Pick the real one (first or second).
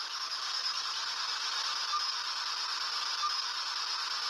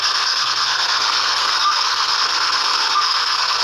first